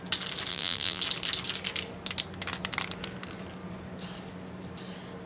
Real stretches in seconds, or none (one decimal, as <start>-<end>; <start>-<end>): 0.0-0.5; 1.0-5.3